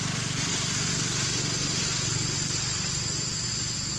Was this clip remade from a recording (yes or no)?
no